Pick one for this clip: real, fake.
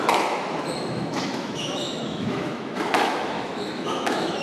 fake